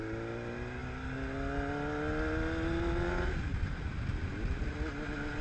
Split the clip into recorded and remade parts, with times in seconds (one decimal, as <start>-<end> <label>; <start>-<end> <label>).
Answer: 0.0-5.4 recorded